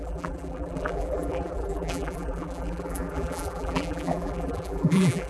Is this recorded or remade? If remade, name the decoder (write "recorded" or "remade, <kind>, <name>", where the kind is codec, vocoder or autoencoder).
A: remade, vocoder, BigVGAN v2